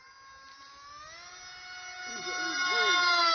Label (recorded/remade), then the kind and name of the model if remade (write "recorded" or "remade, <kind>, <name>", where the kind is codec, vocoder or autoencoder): recorded